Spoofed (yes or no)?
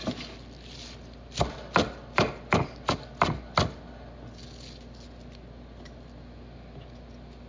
no